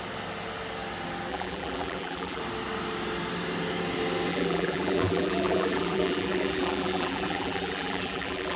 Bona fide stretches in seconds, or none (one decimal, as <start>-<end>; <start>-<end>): 0.0-1.3; 2.4-4.3